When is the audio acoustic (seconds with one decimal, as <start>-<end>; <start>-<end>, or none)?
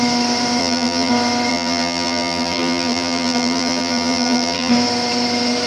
0.0-0.6; 1.1-1.5; 4.7-5.7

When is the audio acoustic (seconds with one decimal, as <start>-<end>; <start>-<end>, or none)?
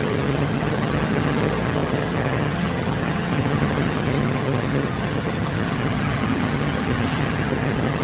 none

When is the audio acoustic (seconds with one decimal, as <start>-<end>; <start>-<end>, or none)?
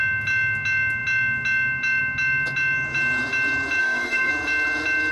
0.0-3.8; 4.3-5.1